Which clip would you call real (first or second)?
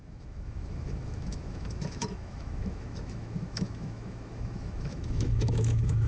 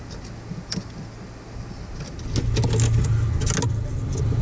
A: second